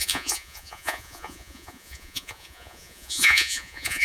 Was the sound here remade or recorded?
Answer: remade